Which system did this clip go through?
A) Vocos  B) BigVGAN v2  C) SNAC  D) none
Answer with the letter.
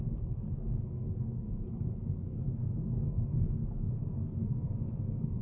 C